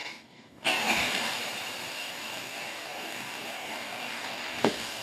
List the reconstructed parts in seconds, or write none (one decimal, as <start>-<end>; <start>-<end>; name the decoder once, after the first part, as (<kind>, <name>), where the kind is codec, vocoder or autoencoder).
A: 0.0-1.4 (codec, DAC); 1.9-5.0